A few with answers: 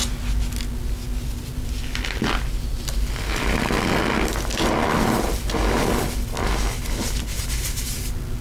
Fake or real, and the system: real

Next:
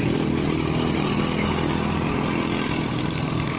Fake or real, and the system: real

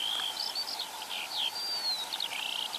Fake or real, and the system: real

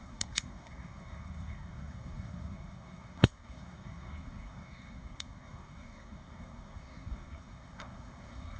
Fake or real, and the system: fake, codec, SNAC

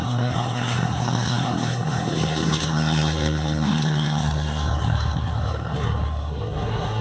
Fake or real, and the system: fake, codec, SNAC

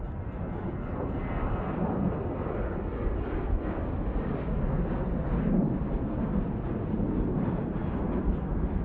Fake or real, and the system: real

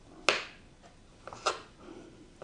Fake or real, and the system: real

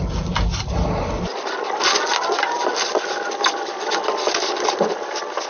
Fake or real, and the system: real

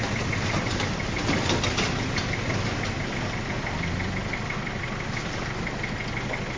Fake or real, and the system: real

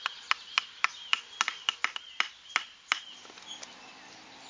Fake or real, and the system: real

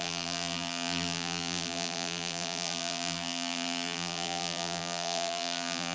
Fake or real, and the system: fake, vocoder, BigVGAN v2